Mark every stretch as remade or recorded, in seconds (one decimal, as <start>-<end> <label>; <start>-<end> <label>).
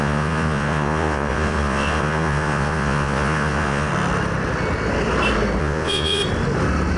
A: 0.0-3.9 remade; 3.9-5.6 recorded; 5.6-6.2 remade; 6.2-7.0 recorded